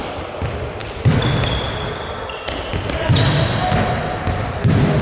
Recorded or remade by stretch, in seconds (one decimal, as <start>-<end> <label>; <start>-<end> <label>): 0.0-5.0 recorded